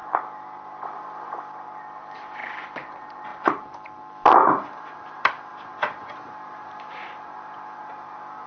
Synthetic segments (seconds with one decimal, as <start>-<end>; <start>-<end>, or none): 1.0-2.4; 2.9-8.5

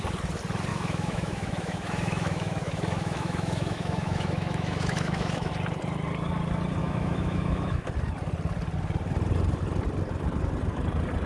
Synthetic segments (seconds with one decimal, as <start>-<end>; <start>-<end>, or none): 0.7-5.5; 6.8-7.9

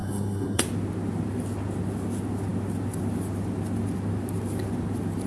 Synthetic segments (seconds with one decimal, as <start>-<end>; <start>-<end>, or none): 0.0-0.6

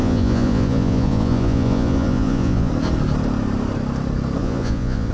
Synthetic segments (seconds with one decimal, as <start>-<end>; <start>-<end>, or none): 0.0-2.7; 4.4-5.1

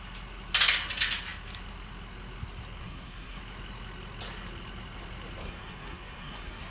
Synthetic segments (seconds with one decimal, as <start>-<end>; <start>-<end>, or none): 2.8-3.4; 5.4-6.7

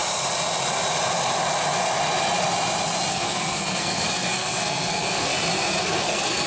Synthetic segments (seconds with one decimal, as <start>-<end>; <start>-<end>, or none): 3.1-5.3; 5.8-6.5